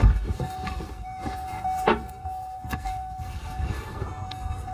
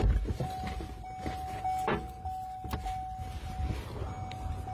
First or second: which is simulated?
first